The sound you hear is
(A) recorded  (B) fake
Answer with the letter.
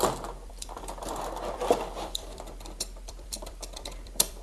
B